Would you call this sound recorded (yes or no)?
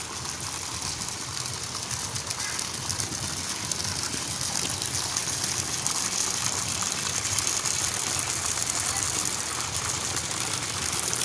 yes